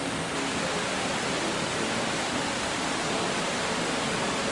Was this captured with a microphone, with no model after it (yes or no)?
yes